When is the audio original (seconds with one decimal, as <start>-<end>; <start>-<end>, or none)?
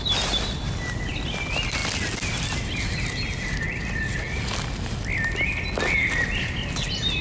0.0-7.2